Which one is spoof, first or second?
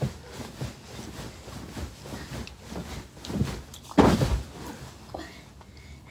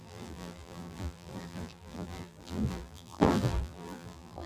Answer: second